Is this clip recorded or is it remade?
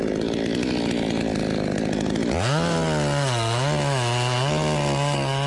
recorded